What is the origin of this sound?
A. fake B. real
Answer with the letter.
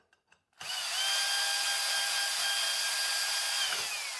B